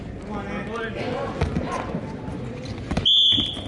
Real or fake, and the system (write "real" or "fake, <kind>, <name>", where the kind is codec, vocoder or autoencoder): real